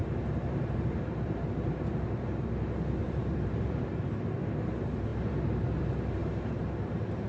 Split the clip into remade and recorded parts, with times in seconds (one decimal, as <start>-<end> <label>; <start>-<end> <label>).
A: 0.0-1.8 remade; 1.8-3.0 recorded; 3.0-3.8 remade; 3.8-6.2 recorded; 6.2-7.3 remade